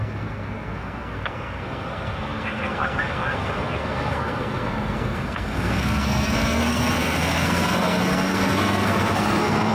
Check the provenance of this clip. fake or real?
fake